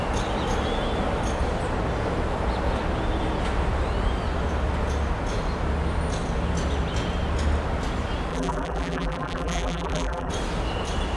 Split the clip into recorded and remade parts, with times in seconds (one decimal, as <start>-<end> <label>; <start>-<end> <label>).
0.0-8.3 recorded; 8.3-10.3 remade; 10.3-11.2 recorded